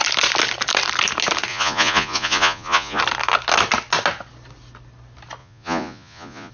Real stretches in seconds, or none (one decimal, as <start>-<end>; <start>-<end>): 0.0-1.5; 3.0-5.4